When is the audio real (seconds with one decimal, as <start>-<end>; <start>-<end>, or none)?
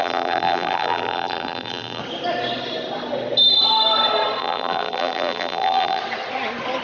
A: 2.0-4.4; 6.0-6.8